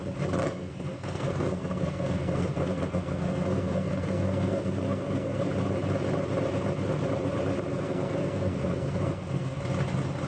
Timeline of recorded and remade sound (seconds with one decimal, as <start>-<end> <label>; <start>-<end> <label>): 0.0-0.4 recorded; 0.4-5.4 remade; 5.4-7.7 recorded; 7.7-9.6 remade; 9.6-10.3 recorded